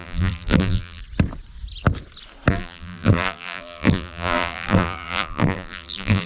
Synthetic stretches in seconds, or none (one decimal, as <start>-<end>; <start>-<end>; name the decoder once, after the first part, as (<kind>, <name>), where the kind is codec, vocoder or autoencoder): 0.0-1.0 (vocoder, BigVGAN v2); 2.5-6.3